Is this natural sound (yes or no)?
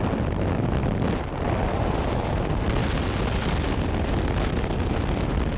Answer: yes